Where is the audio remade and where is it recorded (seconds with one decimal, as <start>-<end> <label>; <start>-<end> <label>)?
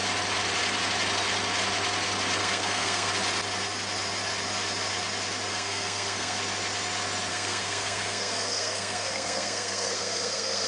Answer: 0.0-2.4 recorded; 2.4-3.1 remade; 3.1-5.5 recorded; 5.5-6.4 remade; 6.4-7.3 recorded; 7.3-10.7 remade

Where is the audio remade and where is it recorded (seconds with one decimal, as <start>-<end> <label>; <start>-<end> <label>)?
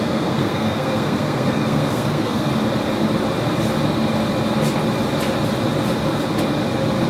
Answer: 0.0-2.5 remade; 2.5-7.1 recorded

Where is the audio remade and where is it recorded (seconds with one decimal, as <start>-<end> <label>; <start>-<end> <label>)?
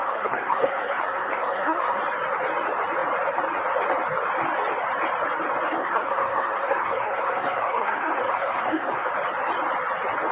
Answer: 0.0-2.0 remade; 2.0-5.8 recorded; 5.8-9.1 remade; 9.1-10.3 recorded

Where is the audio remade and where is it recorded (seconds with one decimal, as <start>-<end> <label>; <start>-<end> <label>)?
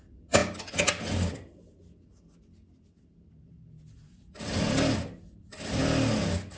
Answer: 0.0-6.6 recorded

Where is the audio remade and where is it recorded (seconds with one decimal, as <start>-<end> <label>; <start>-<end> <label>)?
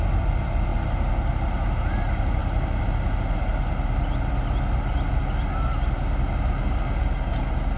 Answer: 0.0-7.8 recorded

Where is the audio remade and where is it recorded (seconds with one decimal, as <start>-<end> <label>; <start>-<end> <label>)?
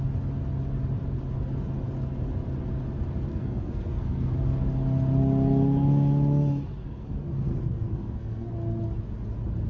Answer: 0.0-3.3 recorded; 3.3-4.3 remade; 4.3-6.8 recorded; 6.8-8.5 remade; 8.5-9.7 recorded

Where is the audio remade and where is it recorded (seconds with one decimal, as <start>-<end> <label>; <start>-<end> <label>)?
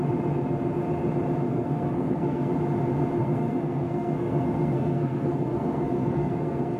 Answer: 0.0-1.5 recorded; 1.5-2.5 remade; 2.5-3.2 recorded; 3.2-6.8 remade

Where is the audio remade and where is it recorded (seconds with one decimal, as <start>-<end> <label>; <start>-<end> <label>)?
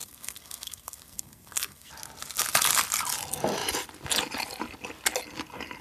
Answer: 0.0-1.9 remade; 1.9-5.8 recorded